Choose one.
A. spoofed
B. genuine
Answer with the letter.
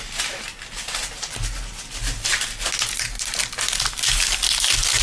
B